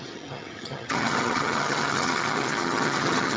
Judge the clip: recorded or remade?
remade